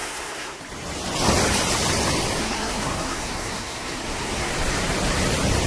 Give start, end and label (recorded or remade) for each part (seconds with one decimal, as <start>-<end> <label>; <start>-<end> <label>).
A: 0.0-0.6 remade; 0.6-2.4 recorded; 2.4-4.5 remade; 4.5-5.7 recorded